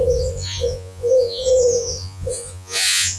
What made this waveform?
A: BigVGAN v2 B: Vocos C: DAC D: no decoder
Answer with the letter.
B